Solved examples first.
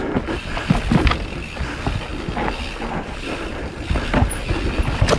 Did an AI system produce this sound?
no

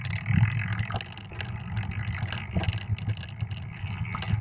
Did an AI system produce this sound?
no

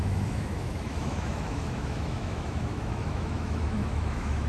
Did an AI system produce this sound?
yes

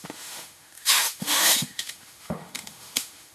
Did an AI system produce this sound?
yes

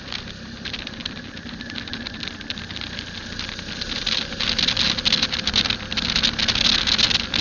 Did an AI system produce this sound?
no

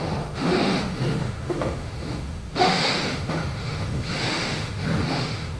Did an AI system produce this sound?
yes